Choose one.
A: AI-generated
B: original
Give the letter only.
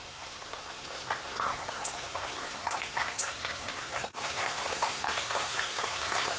A